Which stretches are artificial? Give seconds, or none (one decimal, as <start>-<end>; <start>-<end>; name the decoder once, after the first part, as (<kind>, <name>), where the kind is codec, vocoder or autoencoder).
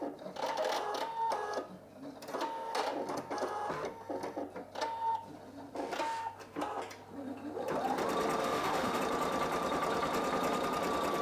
8.4-9.0 (autoencoder, DAC-VAE)